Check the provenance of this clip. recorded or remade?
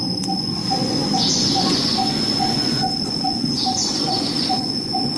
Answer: remade